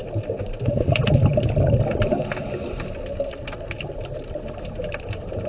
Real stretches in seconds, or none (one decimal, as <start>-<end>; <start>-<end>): 0.0-0.6; 1.3-4.6